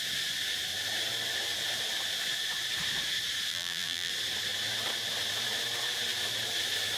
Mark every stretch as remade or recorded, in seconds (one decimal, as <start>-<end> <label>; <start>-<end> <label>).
0.0-3.5 recorded; 3.5-4.1 remade; 4.1-7.0 recorded